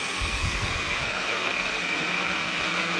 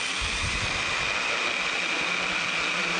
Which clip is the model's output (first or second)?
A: first